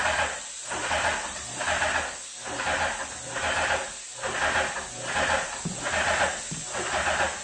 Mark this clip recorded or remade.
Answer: recorded